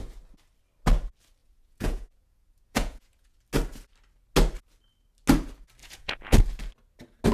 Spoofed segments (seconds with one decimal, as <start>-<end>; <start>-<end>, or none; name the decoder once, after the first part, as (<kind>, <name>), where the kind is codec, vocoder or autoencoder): 1.4-3.4 (vocoder, Vocos); 5.8-6.4